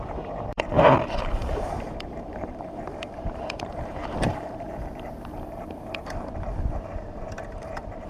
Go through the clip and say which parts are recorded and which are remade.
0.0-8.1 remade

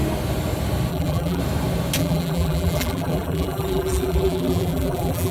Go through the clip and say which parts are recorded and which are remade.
0.0-0.9 recorded; 0.9-1.4 remade; 1.4-2.0 recorded; 2.0-5.3 remade

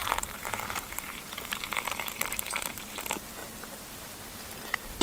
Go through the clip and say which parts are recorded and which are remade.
0.0-3.0 remade; 3.0-3.4 recorded; 3.4-3.9 remade; 3.9-5.0 recorded

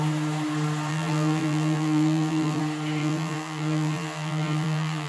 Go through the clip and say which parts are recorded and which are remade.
0.0-0.9 recorded; 0.9-2.6 remade; 2.6-3.0 recorded; 3.0-5.1 remade

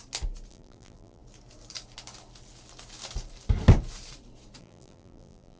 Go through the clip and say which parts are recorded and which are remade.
0.0-0.5 recorded; 0.5-1.2 remade; 1.2-4.6 recorded; 4.6-5.6 remade